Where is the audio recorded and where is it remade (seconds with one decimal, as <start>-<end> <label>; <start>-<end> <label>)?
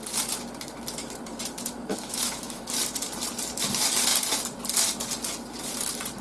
0.0-1.9 recorded; 1.9-2.6 remade; 2.6-6.2 recorded